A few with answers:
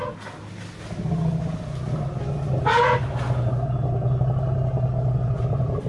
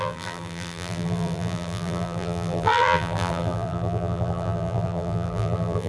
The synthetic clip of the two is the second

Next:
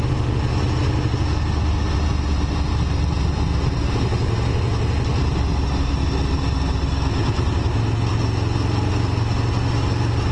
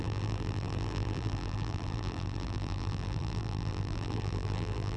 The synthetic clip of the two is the second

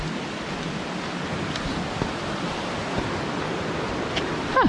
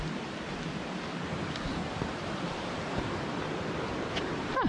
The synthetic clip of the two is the second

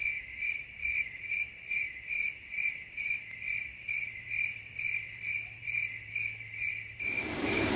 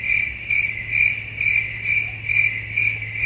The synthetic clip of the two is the first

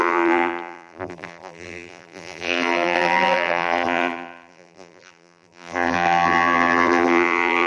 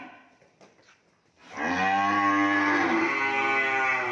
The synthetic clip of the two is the first